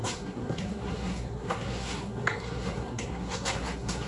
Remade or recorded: remade